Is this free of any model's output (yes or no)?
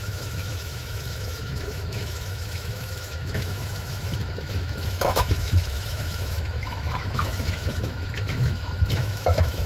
no